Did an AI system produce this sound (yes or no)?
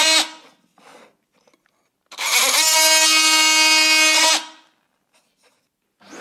no